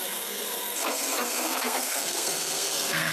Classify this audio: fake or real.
fake